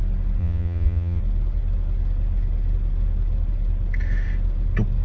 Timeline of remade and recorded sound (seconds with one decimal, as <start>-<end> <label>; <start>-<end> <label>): 0.0-0.4 recorded; 0.4-1.2 remade; 1.2-5.0 recorded